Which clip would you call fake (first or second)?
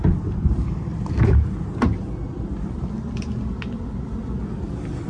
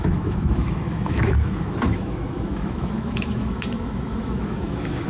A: second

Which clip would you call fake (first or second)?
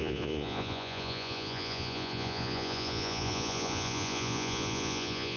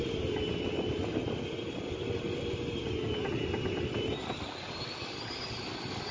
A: first